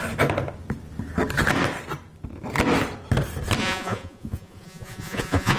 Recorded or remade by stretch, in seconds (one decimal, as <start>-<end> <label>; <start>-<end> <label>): 0.0-3.6 recorded; 3.6-5.6 remade